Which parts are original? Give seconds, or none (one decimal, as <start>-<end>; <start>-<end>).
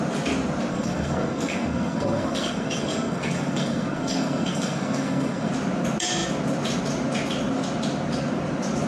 0.0-0.7; 5.5-8.9